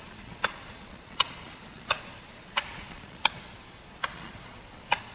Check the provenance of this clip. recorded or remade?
remade